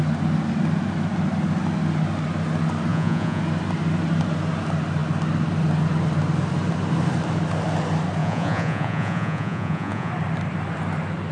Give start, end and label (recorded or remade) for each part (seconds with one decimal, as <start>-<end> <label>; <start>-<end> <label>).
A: 0.0-2.9 recorded; 2.9-3.4 remade; 3.4-8.2 recorded; 8.2-10.1 remade; 10.1-11.3 recorded